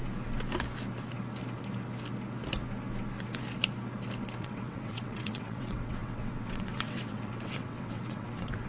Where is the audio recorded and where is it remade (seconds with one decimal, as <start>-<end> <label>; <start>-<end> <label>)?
0.0-4.4 recorded; 4.4-8.7 remade

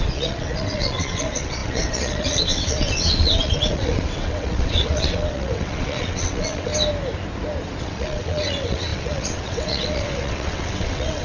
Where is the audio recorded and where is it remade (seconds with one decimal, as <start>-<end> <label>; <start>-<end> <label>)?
0.0-6.7 remade; 6.7-7.8 recorded; 7.8-11.2 remade

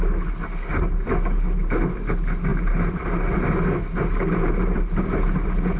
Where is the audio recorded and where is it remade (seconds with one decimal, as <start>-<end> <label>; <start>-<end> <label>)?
0.0-5.8 recorded

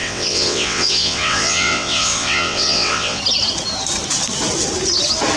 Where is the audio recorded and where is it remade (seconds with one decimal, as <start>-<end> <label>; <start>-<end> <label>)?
0.0-3.2 remade; 3.2-5.4 recorded

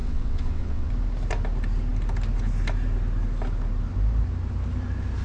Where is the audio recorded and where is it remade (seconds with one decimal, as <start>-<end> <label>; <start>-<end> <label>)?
0.0-0.9 remade; 0.9-5.2 recorded